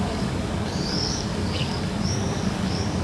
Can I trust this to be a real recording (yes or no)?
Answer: no